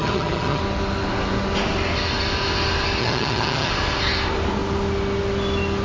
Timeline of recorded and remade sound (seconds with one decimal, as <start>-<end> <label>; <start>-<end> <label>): 0.0-0.6 remade; 0.6-3.0 recorded; 3.0-3.7 remade; 3.7-5.8 recorded